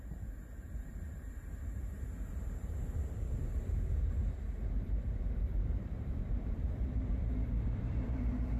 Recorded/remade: remade